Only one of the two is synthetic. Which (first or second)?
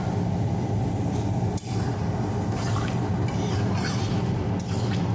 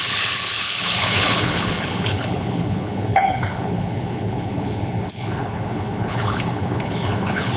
second